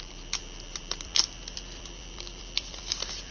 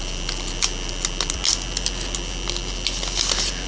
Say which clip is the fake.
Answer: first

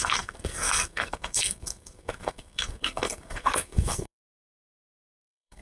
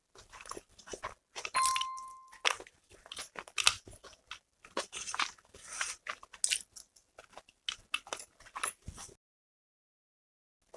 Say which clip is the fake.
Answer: first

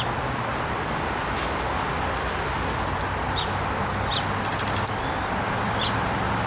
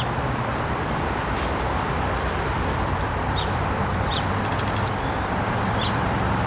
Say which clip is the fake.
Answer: second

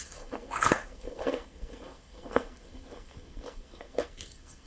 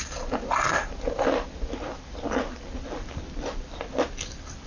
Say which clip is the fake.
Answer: first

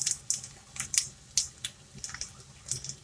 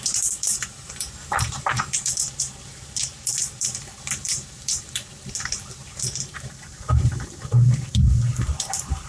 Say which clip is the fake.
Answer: second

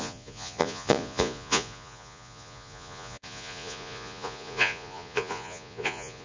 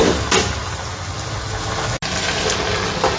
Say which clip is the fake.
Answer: first